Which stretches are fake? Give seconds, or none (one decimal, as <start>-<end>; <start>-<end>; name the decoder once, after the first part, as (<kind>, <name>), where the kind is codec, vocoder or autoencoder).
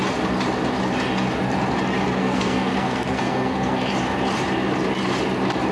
2.2-3.9 (codec, SNAC)